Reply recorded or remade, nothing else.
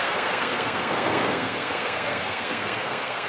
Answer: remade